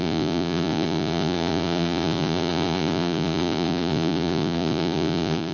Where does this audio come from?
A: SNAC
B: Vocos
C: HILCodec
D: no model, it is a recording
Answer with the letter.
B